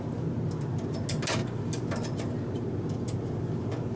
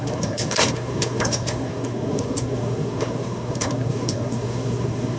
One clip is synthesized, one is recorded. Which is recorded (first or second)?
first